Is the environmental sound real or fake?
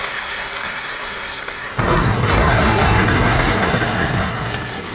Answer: fake